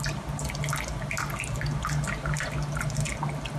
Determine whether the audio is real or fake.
real